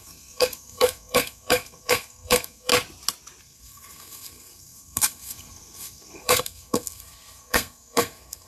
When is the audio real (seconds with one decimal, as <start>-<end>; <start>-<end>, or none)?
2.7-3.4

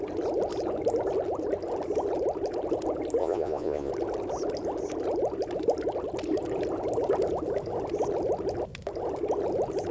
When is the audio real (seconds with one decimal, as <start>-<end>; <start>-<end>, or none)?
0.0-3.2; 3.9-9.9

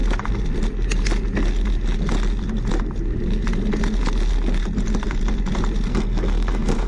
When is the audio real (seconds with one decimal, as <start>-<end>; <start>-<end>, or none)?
0.0-5.9

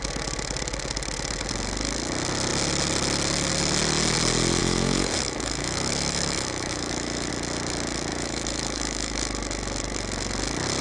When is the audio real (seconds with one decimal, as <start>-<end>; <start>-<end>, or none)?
0.0-4.6; 7.3-8.1; 9.2-10.8

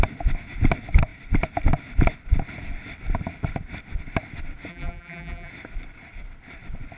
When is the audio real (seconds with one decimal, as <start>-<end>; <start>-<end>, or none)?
0.0-4.7; 5.5-7.0